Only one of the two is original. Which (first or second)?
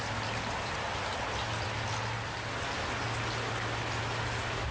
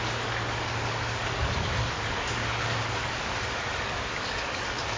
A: first